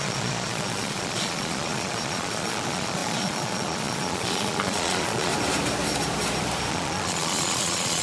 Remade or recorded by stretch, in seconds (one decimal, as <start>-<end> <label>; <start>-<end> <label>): 0.0-5.3 remade; 5.3-6.7 recorded; 6.7-8.0 remade